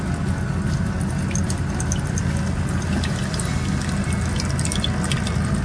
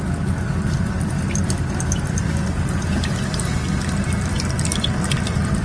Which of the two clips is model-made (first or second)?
second